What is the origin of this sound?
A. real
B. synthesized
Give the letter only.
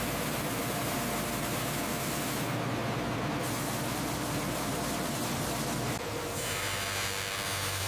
A